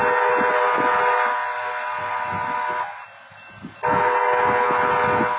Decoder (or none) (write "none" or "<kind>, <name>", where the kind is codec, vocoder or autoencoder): none